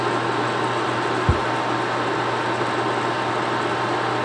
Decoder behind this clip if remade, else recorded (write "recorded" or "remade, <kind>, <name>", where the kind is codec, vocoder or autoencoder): recorded